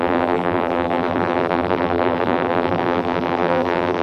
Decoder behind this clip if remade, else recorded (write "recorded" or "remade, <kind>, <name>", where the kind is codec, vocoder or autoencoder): remade, vocoder, BigVGAN v2